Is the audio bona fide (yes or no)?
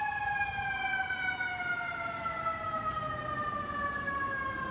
yes